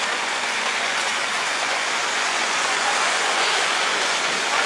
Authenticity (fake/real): fake